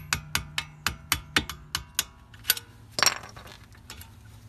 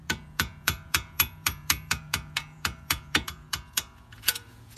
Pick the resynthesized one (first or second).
second